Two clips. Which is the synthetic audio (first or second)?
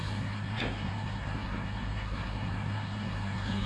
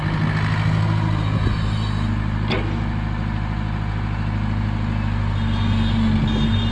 first